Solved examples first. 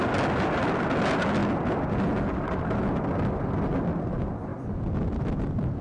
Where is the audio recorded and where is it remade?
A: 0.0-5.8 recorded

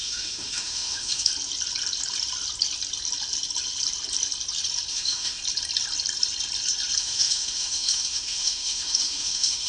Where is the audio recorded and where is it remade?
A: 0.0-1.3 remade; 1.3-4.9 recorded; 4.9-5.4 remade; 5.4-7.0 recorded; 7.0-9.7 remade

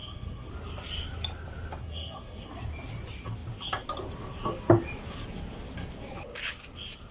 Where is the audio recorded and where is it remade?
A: 0.0-0.5 remade; 0.5-1.8 recorded; 1.8-2.5 remade; 2.5-7.1 recorded

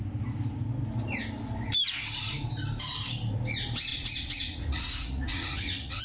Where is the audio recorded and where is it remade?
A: 0.0-3.9 recorded; 3.9-6.0 remade

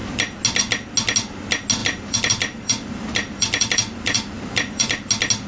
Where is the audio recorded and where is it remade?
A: 0.0-1.8 recorded; 1.8-5.1 remade; 5.1-5.5 recorded